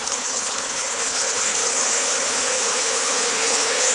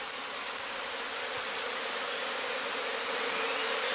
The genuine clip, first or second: second